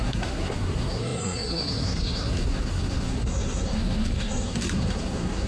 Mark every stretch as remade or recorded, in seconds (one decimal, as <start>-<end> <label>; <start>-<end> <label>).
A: 0.0-5.5 remade